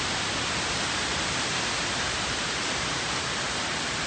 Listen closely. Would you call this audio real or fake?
real